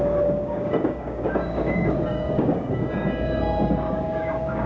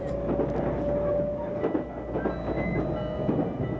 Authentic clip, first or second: second